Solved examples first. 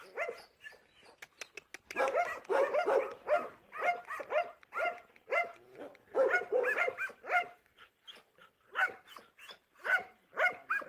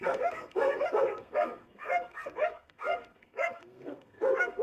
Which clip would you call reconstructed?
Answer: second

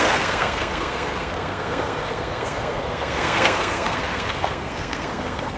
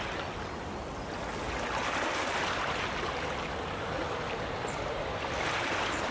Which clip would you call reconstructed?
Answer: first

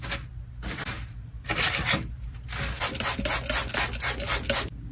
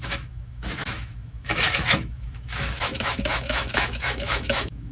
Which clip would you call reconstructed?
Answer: second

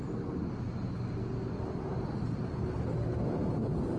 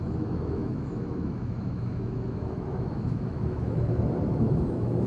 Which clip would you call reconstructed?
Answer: second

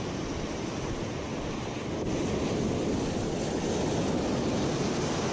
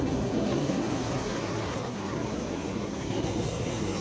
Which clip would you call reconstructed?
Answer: second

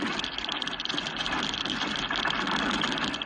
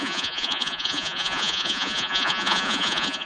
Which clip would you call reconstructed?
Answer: second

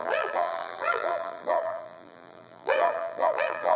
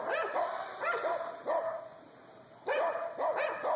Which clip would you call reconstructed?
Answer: first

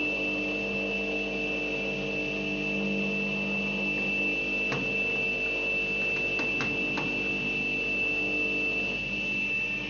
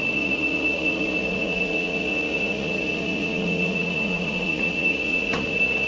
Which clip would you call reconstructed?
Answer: second